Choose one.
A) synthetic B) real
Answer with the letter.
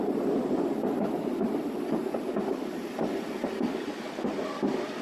B